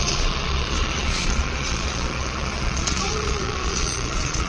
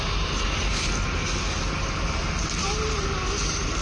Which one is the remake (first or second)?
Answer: first